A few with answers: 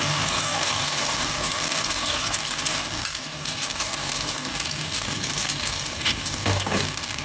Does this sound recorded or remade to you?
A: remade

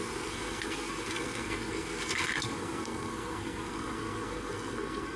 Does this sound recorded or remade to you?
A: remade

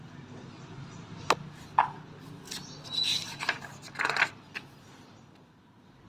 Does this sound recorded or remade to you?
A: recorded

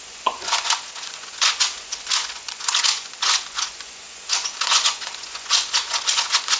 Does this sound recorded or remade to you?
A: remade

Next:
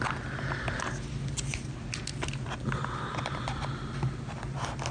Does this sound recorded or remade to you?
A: recorded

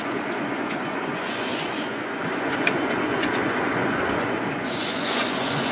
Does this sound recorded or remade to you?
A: remade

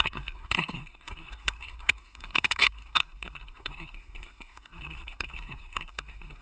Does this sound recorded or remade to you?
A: remade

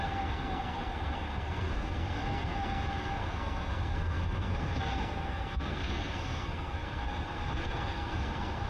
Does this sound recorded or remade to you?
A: remade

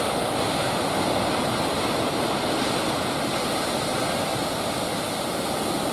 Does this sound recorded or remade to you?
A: recorded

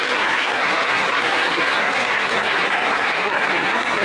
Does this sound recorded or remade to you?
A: remade